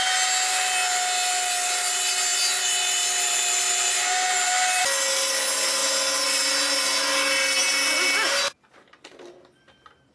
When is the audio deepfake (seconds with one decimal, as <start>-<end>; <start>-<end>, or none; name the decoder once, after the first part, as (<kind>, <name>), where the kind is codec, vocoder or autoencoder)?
none